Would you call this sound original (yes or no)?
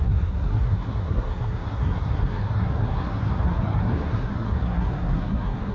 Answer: no